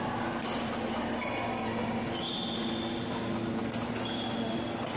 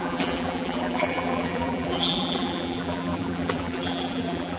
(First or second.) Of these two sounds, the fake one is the second